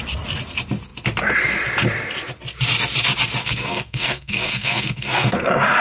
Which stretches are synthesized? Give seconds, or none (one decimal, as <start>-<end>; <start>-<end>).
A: 3.4-5.8